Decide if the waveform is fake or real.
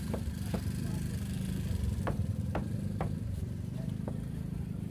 fake